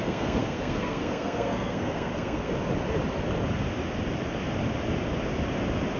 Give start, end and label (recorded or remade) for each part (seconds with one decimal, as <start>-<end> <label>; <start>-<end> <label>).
0.0-2.5 remade; 2.5-6.0 recorded